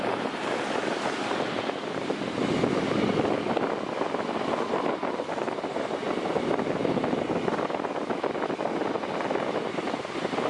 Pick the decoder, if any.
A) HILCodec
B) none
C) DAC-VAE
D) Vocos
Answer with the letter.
B